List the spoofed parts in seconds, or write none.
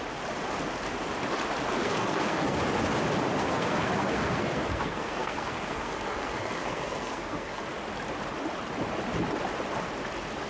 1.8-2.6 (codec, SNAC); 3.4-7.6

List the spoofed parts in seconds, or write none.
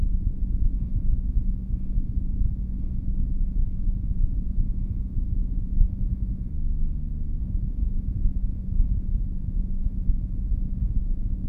0.0-6.5 (vocoder, Vocos); 7.4-11.5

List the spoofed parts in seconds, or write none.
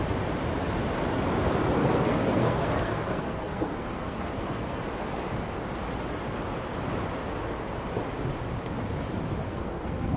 1.8-4.8 (codec, SNAC); 9.4-10.2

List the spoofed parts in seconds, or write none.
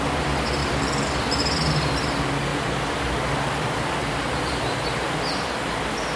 0.6-2.1 (vocoder, BigVGAN v2); 2.5-5.8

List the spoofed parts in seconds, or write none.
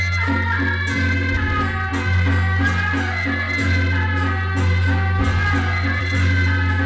none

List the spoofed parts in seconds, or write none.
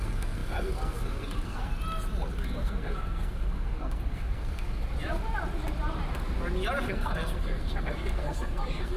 0.0-1.7 (codec, SNAC); 2.4-4.8; 6.8-9.0